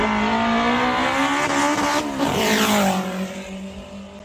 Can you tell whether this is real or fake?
real